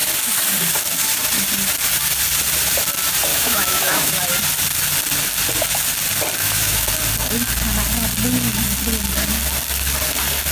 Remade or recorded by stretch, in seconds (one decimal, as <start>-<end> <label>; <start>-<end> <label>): 0.0-3.3 recorded; 3.3-4.1 remade; 4.1-6.4 recorded; 6.4-6.9 remade; 6.9-10.5 recorded